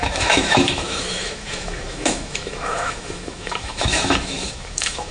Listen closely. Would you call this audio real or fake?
fake